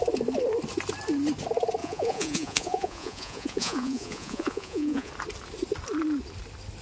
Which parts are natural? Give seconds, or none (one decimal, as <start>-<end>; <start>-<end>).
0.0-1.8; 5.1-6.8